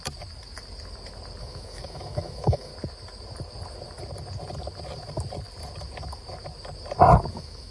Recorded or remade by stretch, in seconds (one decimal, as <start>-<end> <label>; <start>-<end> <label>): 0.0-1.4 recorded; 1.4-2.7 remade; 2.7-7.3 recorded; 7.3-7.7 remade

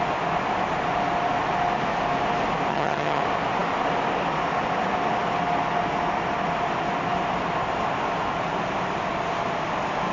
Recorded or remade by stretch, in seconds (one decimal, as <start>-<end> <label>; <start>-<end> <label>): 0.0-2.7 recorded; 2.7-3.2 remade; 3.2-10.1 recorded

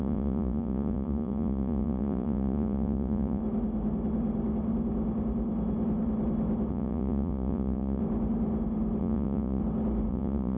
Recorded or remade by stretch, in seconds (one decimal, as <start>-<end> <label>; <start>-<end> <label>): 0.0-3.4 remade; 3.4-6.7 recorded; 6.7-8.0 remade; 8.0-9.0 recorded; 9.0-9.6 remade; 9.6-10.1 recorded; 10.1-10.6 remade

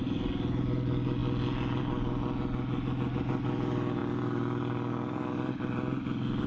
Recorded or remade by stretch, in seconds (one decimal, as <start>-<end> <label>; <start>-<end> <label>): 0.0-6.5 recorded